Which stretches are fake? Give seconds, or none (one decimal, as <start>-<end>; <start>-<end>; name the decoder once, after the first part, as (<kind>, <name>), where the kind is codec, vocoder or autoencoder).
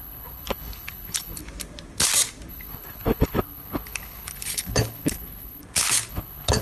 0.0-1.4 (codec, HILCodec); 2.5-5.6; 6.1-6.6